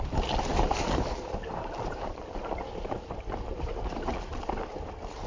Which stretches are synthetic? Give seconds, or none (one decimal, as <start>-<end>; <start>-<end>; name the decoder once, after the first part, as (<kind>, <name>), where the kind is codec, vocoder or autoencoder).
0.5-3.7 (vocoder, BigVGAN v2)